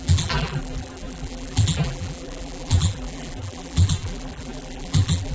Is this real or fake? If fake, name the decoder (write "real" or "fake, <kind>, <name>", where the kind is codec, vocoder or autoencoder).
fake, vocoder, BigVGAN v2